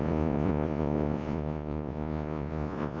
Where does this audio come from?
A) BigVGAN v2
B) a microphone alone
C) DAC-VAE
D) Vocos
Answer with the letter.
D